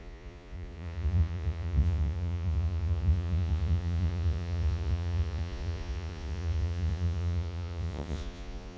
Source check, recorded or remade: remade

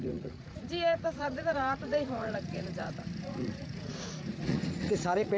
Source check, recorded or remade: remade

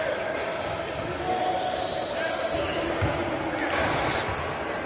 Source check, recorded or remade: recorded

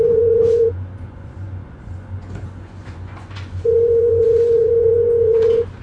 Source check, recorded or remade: remade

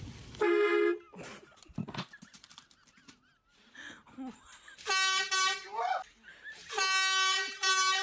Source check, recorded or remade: recorded